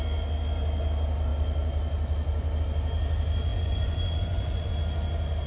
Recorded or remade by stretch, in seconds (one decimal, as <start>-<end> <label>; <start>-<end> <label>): 0.0-3.5 recorded; 3.5-4.7 remade; 4.7-5.5 recorded